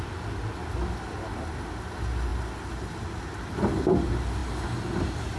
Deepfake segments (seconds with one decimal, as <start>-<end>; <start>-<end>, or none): none